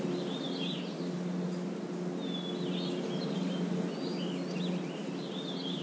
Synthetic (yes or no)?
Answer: no